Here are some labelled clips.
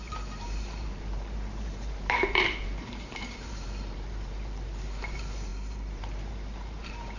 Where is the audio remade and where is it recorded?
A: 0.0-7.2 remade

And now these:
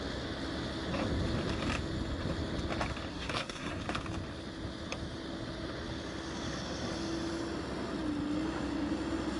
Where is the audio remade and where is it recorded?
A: 0.0-3.1 recorded; 3.1-3.8 remade; 3.8-9.4 recorded

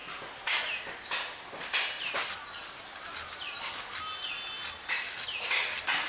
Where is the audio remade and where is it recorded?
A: 0.0-6.1 recorded

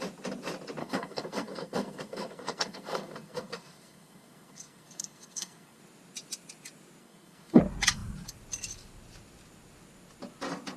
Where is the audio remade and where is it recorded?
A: 0.0-0.8 recorded; 0.8-5.8 remade; 5.8-7.0 recorded; 7.0-7.6 remade; 7.6-10.8 recorded